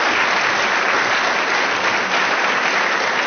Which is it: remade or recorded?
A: recorded